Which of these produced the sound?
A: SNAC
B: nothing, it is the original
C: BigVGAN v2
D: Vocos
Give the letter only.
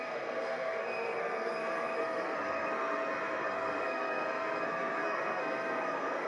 A